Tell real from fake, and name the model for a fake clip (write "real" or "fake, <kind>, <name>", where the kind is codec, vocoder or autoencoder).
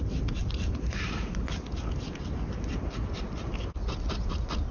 real